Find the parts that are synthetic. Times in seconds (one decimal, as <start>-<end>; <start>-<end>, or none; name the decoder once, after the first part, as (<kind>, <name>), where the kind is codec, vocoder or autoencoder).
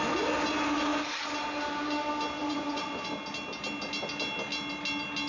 2.4-3.1 (vocoder, Vocos)